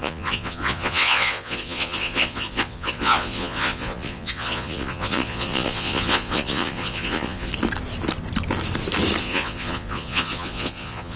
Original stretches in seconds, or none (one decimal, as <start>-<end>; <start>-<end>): 7.5-9.2